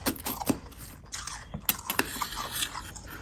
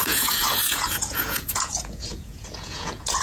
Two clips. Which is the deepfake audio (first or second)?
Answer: second